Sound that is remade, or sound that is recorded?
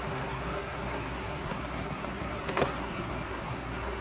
remade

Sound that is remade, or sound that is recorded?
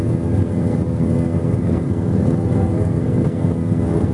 remade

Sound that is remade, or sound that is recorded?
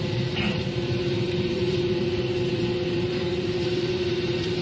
remade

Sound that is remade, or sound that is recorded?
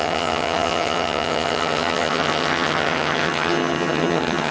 remade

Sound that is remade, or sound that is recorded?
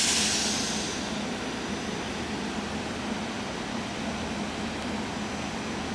recorded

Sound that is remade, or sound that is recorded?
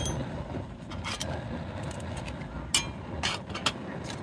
recorded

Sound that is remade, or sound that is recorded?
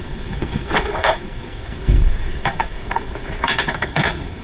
remade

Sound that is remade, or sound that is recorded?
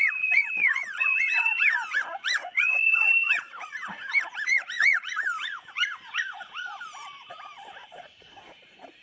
remade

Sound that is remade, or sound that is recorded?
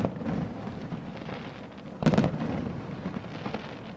recorded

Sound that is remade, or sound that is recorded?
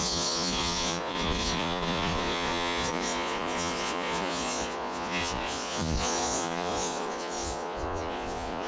remade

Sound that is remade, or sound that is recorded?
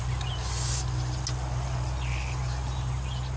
recorded